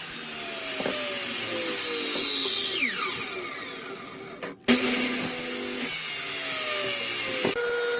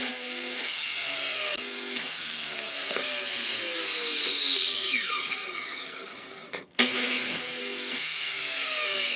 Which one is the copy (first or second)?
second